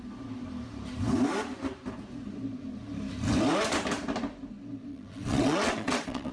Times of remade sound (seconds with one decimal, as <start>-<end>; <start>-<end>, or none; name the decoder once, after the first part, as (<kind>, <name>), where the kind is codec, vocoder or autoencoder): 4.9-6.3 (vocoder, WaveNeXt)